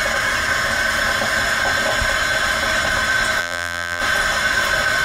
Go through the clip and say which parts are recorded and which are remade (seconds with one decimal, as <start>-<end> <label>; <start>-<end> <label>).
0.0-3.4 recorded; 3.4-4.0 remade; 4.0-5.0 recorded